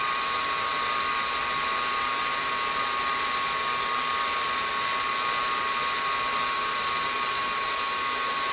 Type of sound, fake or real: real